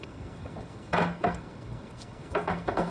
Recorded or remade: remade